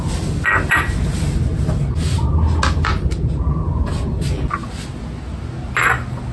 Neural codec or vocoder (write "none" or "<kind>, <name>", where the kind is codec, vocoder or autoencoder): none